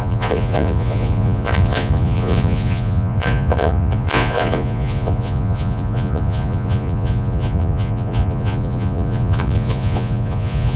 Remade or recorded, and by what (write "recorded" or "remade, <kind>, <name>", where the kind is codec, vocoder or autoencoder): remade, vocoder, Vocos